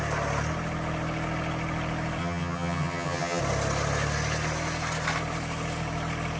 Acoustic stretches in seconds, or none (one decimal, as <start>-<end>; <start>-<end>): 0.0-2.2; 3.4-6.4